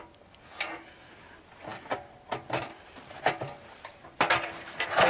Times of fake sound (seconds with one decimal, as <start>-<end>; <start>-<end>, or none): none